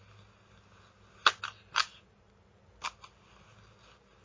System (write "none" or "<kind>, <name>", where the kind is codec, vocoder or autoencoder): none